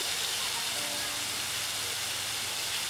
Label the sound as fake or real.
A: real